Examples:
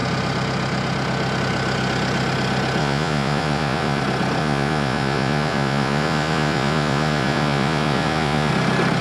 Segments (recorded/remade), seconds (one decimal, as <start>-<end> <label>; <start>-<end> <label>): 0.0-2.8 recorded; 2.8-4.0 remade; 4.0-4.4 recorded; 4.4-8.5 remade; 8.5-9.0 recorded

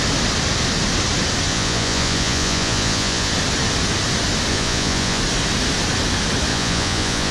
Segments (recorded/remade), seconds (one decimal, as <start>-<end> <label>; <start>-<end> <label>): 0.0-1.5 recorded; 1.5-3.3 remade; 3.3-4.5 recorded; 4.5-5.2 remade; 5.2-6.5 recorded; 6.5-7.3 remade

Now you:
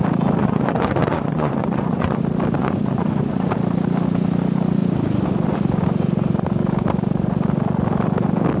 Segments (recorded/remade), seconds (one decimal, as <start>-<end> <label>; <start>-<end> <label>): 0.0-0.4 recorded; 0.4-2.2 remade; 2.2-2.6 recorded; 2.6-3.5 remade; 3.5-8.6 recorded

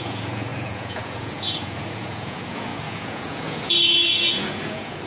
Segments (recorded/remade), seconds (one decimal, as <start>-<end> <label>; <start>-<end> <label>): 0.0-5.1 remade

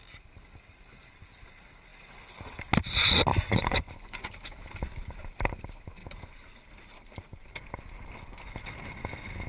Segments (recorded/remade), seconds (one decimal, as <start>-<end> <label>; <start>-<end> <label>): 0.0-3.3 recorded; 3.3-4.3 remade; 4.3-9.5 recorded